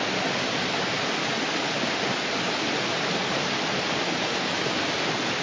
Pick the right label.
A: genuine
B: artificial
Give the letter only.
A